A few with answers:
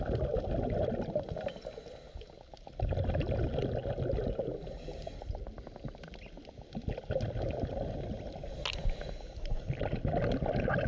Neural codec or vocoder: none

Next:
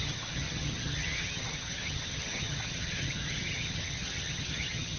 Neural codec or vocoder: vocoder, HiFi-GAN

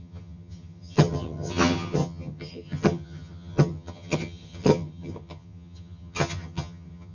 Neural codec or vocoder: vocoder, HiFi-GAN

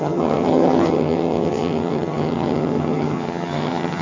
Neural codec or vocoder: vocoder, HiFi-GAN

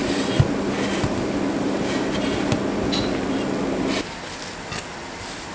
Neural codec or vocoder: none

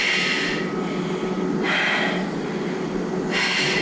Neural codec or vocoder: none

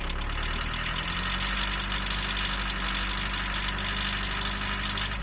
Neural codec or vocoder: none